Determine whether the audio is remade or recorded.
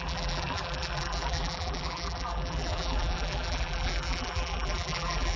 remade